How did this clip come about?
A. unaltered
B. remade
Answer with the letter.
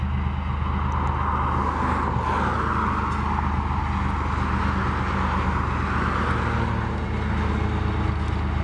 A